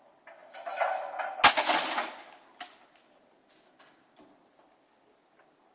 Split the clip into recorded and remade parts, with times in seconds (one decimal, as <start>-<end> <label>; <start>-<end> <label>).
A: 0.0-5.7 recorded